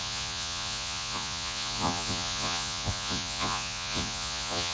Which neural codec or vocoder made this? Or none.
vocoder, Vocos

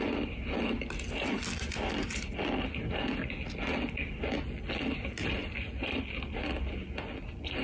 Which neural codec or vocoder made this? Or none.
none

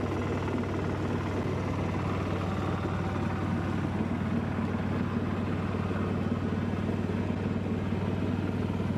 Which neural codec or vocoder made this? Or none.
none